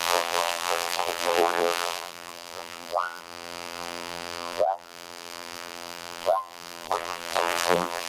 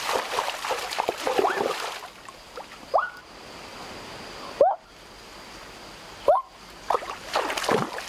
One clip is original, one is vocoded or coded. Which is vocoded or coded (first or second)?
first